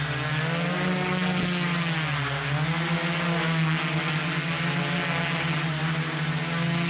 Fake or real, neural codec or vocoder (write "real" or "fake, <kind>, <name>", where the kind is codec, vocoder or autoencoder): real